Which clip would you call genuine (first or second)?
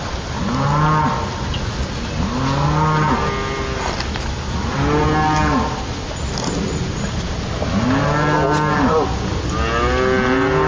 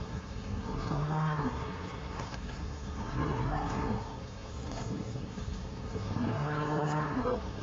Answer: first